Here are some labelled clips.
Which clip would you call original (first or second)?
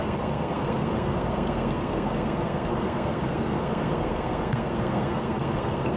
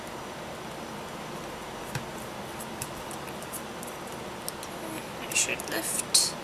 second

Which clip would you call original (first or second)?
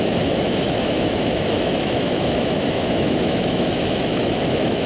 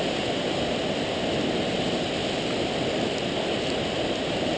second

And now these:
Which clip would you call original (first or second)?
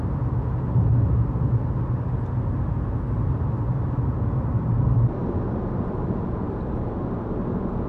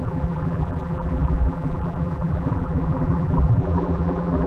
first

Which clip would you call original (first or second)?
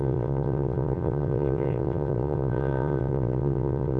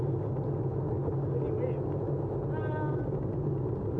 second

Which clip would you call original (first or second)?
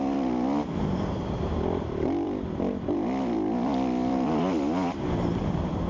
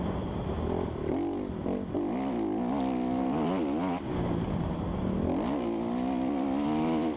second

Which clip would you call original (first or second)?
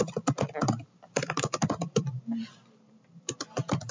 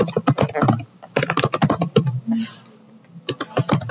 second